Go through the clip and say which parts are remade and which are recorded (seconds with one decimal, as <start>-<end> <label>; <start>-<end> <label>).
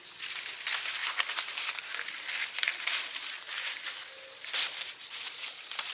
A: 0.0-1.0 remade; 1.0-4.5 recorded; 4.5-5.9 remade